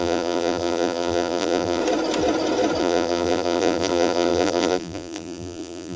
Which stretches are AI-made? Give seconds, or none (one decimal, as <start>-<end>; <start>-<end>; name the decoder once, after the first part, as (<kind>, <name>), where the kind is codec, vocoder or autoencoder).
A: 0.0-1.8 (vocoder, BigVGAN v2); 2.8-6.0